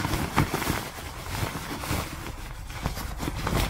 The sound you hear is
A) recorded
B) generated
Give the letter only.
A